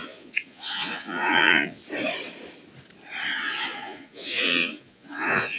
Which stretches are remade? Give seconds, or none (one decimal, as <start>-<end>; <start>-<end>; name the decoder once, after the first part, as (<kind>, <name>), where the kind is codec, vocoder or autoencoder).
0.0-1.8 (vocoder, Vocos); 3.3-5.6